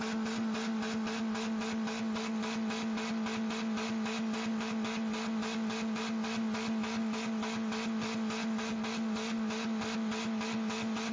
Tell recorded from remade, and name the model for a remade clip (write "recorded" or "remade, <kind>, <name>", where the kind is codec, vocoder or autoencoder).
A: recorded